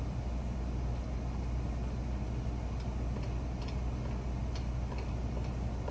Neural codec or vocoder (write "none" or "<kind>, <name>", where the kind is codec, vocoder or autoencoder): none